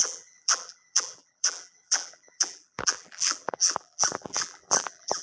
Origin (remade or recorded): remade